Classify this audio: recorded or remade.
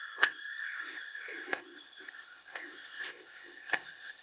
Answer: remade